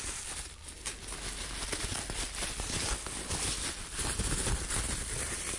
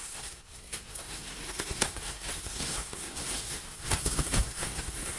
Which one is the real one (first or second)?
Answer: first